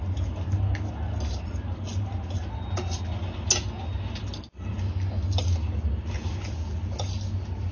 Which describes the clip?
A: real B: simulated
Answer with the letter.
A